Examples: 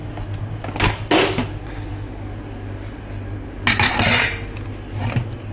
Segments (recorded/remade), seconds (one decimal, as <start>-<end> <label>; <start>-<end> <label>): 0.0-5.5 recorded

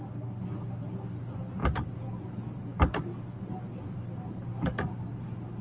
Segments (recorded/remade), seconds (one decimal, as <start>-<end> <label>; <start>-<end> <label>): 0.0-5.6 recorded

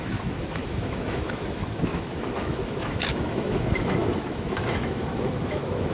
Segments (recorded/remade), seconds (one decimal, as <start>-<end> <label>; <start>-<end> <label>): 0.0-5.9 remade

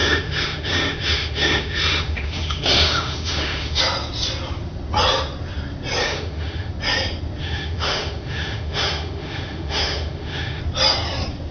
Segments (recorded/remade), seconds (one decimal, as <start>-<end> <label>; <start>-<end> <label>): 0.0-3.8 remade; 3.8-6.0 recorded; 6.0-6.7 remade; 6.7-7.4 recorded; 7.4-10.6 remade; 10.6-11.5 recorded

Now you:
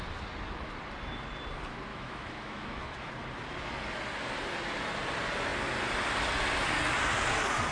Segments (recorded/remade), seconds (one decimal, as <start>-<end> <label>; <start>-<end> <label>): 0.0-1.9 recorded; 1.9-3.1 remade; 3.1-7.7 recorded

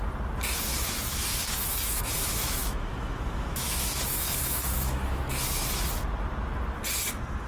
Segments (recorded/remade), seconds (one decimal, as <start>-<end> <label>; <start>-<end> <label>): 0.0-0.7 recorded; 0.7-5.2 remade; 5.2-7.5 recorded